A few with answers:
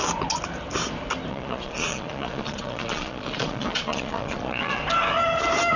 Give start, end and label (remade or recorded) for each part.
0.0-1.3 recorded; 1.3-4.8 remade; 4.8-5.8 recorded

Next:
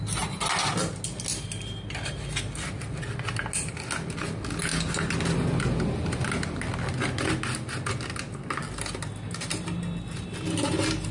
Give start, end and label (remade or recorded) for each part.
0.0-11.1 recorded

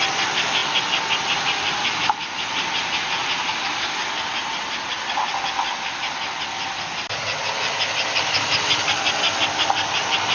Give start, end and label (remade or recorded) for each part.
0.0-10.3 recorded

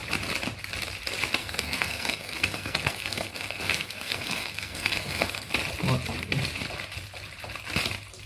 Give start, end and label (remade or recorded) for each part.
0.0-1.4 recorded; 1.4-5.5 remade; 5.5-8.3 recorded

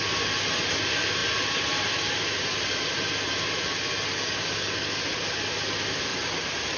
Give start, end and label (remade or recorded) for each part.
0.0-4.1 recorded; 4.1-4.9 remade; 4.9-6.8 recorded